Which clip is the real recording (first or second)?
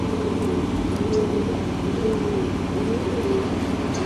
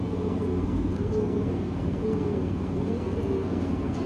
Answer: first